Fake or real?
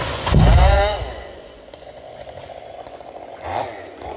fake